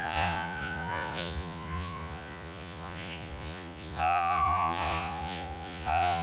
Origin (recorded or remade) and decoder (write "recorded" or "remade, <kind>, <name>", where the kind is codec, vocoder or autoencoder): remade, vocoder, Vocos